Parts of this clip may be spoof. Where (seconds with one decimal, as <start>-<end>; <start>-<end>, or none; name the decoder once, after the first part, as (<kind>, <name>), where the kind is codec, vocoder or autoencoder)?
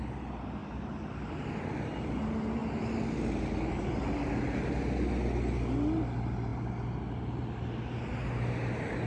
none